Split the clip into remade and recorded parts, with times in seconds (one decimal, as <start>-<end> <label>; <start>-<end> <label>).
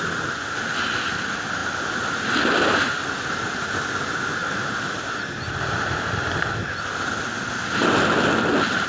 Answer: 0.0-4.4 recorded; 4.4-4.9 remade; 4.9-8.9 recorded